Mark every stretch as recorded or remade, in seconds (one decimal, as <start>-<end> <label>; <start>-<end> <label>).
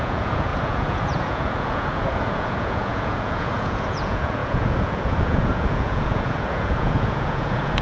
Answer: 0.0-7.8 remade